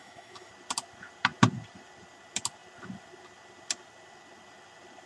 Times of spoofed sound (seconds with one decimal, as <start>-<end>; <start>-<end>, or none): 0.0-0.5